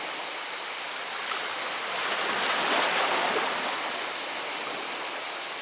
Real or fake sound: real